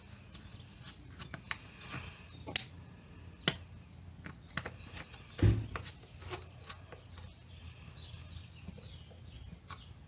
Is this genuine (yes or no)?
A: yes